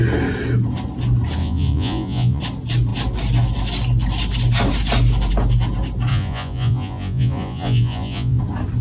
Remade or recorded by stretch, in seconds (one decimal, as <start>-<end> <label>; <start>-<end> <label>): 0.0-1.4 recorded; 1.4-2.4 remade; 2.4-6.1 recorded; 6.1-8.4 remade; 8.4-8.8 recorded